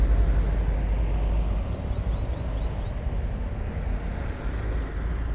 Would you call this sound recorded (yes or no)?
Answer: yes